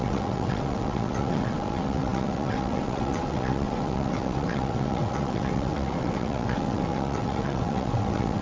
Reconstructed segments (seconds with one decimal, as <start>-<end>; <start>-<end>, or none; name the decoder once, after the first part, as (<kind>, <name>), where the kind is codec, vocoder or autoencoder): 0.0-8.4 (vocoder, WaveNeXt)